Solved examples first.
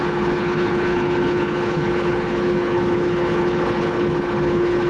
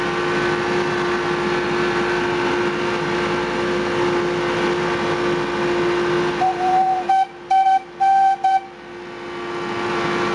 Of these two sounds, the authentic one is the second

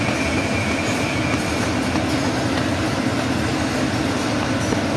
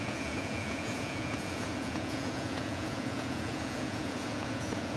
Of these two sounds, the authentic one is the first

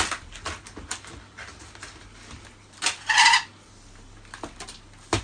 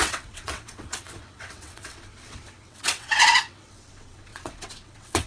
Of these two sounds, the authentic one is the first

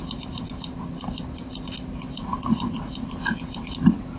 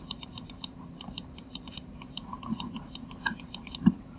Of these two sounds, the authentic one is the first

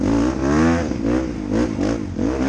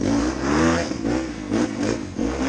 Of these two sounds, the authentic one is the first